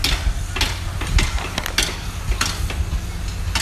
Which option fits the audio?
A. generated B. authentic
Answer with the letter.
B